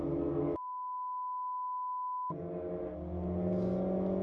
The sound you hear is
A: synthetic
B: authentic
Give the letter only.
B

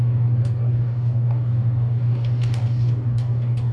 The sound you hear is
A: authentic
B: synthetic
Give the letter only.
B